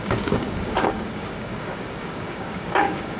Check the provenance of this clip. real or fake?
fake